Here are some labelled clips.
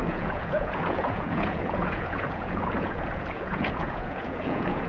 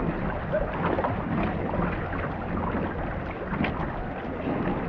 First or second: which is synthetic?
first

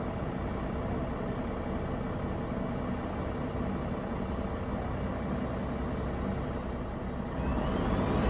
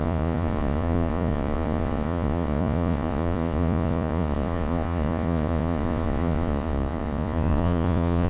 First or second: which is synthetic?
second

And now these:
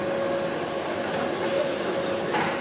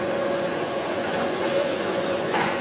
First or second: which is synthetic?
second